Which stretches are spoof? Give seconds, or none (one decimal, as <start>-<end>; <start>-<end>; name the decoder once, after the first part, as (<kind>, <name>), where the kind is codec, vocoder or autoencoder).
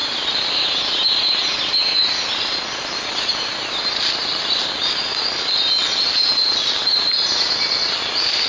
none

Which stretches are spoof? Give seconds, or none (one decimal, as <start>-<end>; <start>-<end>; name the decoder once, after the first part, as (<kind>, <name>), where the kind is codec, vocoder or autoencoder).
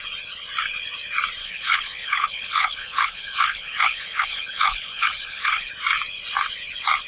1.4-5.7 (codec, HILCodec)